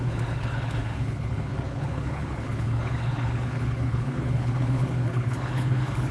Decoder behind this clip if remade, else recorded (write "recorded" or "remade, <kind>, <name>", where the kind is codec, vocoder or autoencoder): remade, codec, HILCodec